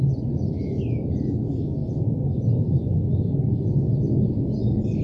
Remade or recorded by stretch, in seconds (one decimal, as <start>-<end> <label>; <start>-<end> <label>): 0.0-5.0 recorded